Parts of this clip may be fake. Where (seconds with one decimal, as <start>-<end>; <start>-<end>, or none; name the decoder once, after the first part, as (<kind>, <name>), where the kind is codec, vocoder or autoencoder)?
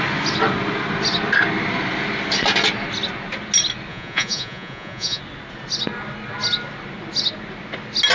3.9-5.2 (vocoder, Vocos)